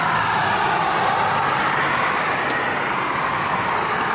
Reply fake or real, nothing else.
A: real